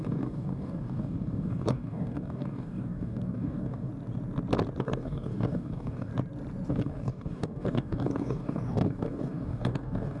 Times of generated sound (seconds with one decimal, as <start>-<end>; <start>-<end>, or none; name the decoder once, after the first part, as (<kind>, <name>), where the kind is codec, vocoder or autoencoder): 0.0-3.9 (codec, DAC); 4.8-6.1; 6.7-10.2